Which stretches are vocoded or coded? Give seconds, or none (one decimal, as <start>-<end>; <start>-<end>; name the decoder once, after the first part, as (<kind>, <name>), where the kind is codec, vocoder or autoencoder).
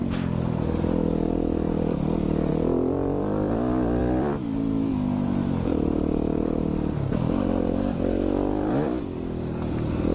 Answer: none